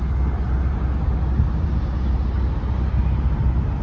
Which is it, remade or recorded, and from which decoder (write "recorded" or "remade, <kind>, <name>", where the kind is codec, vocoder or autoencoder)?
recorded